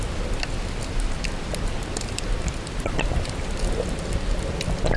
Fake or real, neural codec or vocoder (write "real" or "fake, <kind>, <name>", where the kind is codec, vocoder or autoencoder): real